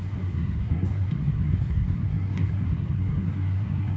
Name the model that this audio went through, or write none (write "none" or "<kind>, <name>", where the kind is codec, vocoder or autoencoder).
codec, SNAC